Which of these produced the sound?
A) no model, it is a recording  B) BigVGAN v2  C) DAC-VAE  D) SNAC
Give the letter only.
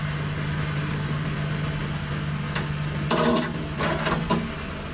A